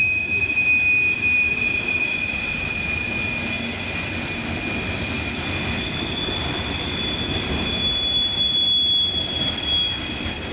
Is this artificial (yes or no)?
no